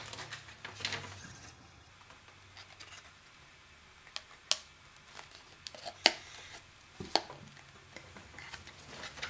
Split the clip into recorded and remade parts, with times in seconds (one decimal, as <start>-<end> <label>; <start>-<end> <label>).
0.0-1.2 recorded; 1.2-1.9 remade; 1.9-9.3 recorded